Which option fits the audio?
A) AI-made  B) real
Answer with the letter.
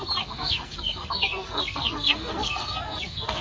A